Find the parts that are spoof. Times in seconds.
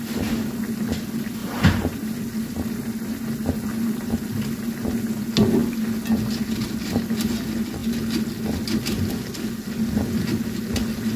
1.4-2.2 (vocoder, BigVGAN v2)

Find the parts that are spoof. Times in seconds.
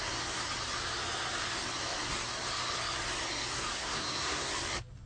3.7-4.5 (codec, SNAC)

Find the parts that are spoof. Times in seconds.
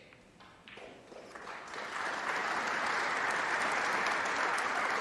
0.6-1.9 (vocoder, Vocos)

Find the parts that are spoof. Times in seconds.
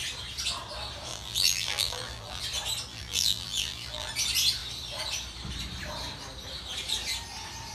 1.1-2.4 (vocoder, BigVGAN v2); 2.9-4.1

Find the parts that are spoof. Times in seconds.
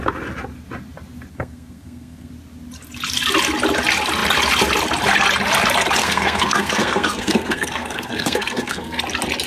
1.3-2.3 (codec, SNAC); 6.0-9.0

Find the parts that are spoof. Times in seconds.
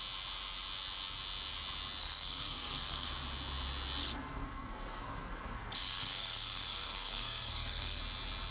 2.0-3.1 (codec, SNAC); 4.0-8.0